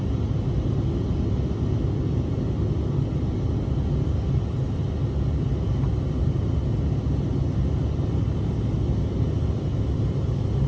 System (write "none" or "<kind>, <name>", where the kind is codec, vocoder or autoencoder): none